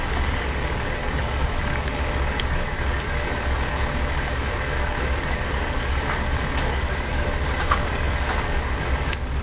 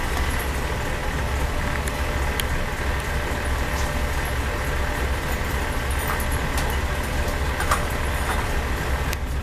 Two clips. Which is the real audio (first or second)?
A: second